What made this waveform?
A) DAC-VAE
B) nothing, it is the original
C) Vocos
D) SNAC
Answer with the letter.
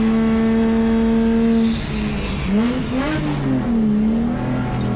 B